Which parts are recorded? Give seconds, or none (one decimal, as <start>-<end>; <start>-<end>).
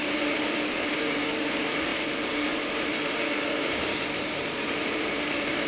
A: 0.9-1.9; 5.3-5.7